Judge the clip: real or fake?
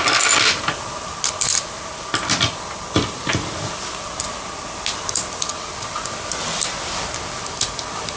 real